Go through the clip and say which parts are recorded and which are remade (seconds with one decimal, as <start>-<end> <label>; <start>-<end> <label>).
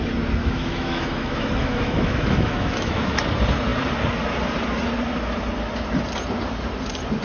0.0-0.4 recorded; 0.4-3.2 remade; 3.2-7.2 recorded